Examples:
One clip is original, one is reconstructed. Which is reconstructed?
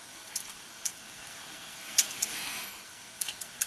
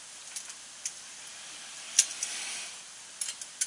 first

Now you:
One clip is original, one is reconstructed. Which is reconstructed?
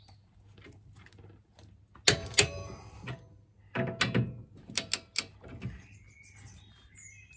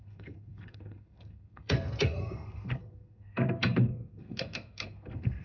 second